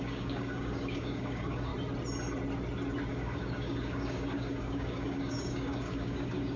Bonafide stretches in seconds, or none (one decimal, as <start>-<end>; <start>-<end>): 1.7-3.1